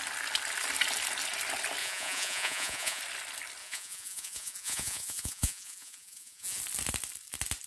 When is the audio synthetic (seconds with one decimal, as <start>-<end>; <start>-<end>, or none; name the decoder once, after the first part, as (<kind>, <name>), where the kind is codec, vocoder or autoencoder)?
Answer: 1.8-3.0 (vocoder, Vocos); 3.6-6.6